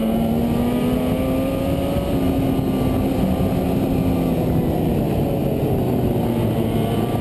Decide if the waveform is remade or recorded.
recorded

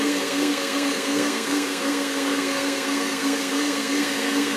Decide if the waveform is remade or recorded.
remade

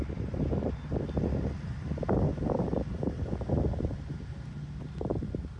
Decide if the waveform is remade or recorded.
recorded